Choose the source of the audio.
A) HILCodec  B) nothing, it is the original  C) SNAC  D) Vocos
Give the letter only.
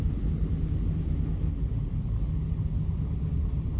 B